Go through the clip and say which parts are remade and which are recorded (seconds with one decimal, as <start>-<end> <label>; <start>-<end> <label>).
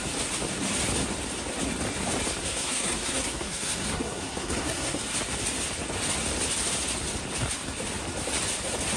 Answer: 0.0-2.4 recorded; 2.4-5.0 remade; 5.0-9.0 recorded